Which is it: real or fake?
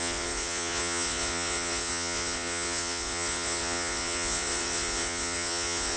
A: fake